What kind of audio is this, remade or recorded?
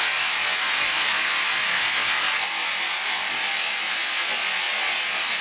recorded